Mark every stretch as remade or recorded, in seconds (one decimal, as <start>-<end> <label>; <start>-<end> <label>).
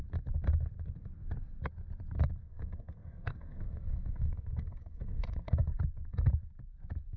0.0-2.4 recorded; 2.4-6.3 remade; 6.3-7.2 recorded